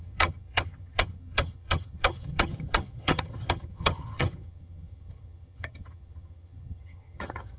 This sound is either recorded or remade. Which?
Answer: remade